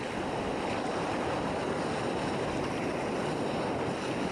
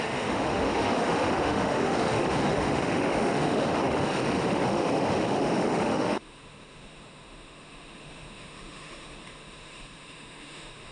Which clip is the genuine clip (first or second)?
first